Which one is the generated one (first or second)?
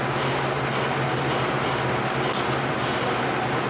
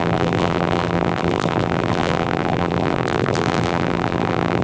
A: second